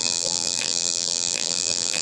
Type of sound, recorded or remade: remade